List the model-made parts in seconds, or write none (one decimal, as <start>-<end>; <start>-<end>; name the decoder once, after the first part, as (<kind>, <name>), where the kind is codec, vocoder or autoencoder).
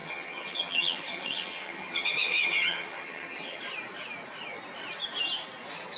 0.0-3.6 (vocoder, HiFi-GAN)